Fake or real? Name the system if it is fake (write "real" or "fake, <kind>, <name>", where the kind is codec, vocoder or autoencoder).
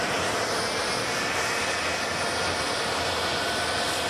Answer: real